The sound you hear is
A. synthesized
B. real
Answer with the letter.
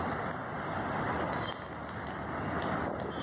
B